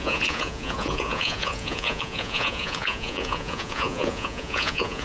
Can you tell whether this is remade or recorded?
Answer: remade